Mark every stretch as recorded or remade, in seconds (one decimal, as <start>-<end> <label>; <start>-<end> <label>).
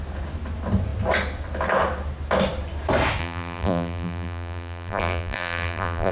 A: 0.0-3.2 recorded; 3.2-6.1 remade